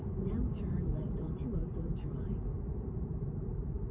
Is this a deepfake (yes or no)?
yes